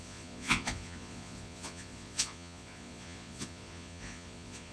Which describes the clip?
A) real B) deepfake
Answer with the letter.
B